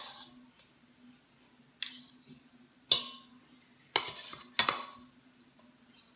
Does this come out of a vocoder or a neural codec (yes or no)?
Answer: no